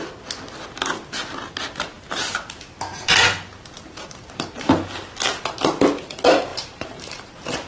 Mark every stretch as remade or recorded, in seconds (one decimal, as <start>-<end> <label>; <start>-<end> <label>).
0.0-2.9 recorded; 2.9-4.7 remade; 4.7-6.5 recorded; 6.5-7.7 remade